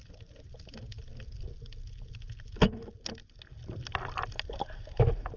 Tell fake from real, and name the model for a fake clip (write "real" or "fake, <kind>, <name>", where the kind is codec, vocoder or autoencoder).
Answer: real